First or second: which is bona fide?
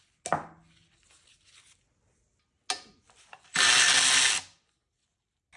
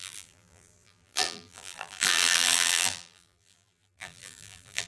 first